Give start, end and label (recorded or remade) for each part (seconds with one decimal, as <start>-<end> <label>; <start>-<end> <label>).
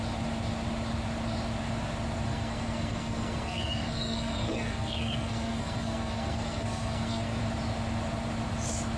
0.0-2.3 recorded; 2.3-7.4 remade; 7.4-9.0 recorded